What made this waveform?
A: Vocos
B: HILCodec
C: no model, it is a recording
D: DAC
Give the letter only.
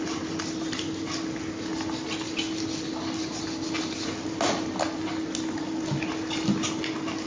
C